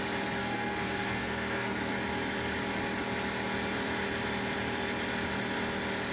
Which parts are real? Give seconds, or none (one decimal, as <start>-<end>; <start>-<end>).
0.0-0.4; 1.9-6.1